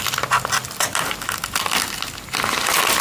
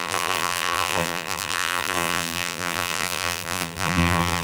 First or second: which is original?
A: first